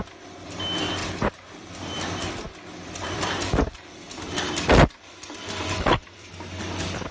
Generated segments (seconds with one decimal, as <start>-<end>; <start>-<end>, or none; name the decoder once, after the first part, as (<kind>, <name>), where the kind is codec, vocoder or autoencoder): 1.0-1.7 (vocoder, BigVGAN v2); 2.2-6.3